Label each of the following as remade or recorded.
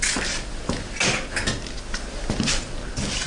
recorded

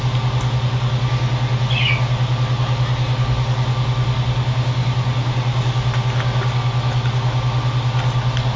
recorded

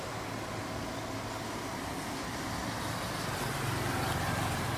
recorded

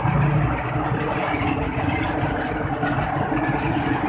recorded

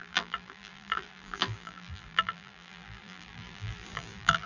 remade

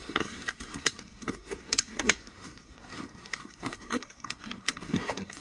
remade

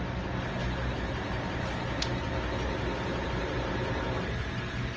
recorded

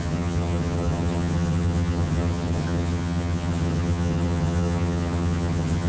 remade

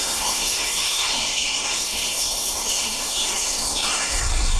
remade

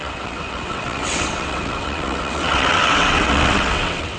remade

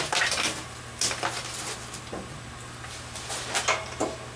recorded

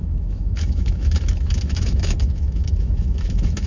remade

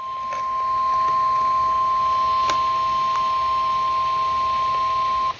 recorded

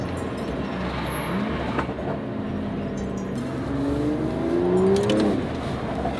recorded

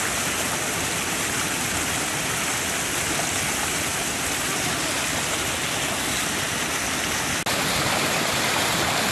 recorded